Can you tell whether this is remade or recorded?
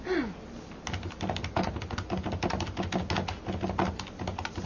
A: recorded